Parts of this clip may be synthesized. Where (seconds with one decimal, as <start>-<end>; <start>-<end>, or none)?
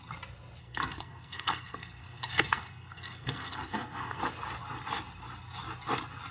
0.6-4.2